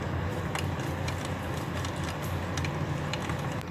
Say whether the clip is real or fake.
real